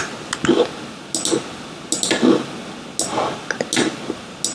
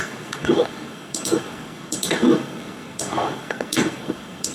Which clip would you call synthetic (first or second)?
second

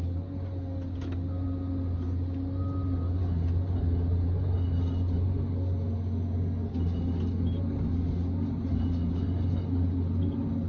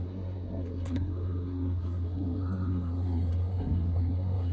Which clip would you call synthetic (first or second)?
second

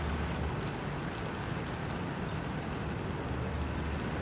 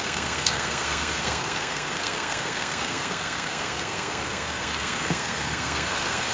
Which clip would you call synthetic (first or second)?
second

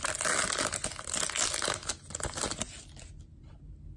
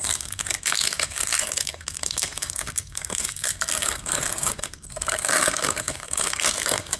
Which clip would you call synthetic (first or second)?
second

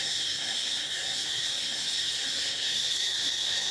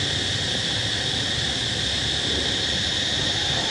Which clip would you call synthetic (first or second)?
first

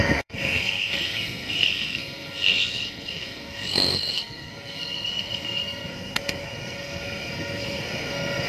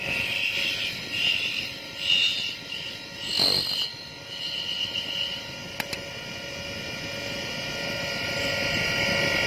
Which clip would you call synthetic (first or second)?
first